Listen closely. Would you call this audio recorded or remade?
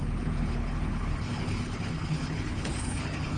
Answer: remade